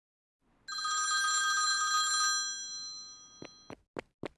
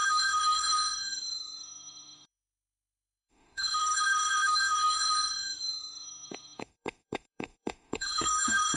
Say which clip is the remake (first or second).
second